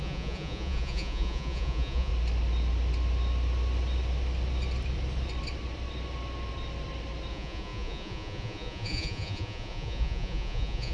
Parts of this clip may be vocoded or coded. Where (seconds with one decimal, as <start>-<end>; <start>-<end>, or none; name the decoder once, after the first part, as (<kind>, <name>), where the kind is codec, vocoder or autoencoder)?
0.0-2.1 (vocoder, Vocos); 7.3-10.9